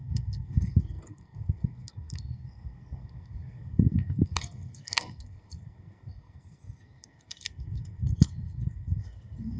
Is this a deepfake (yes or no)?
yes